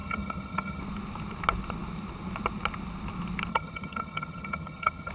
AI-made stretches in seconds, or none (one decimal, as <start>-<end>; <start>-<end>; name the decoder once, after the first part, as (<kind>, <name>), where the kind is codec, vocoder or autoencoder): 0.0-0.8 (vocoder, HiFi-GAN); 3.5-5.1